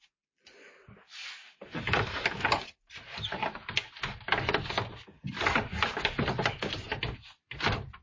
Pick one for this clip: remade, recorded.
recorded